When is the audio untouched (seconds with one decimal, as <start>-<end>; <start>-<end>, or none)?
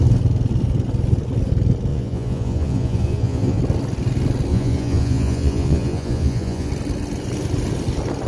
0.0-1.9; 3.6-4.5; 6.7-8.3